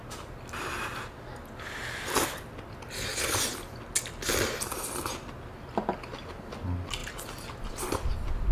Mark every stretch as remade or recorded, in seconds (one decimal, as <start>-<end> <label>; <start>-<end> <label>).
0.0-8.5 recorded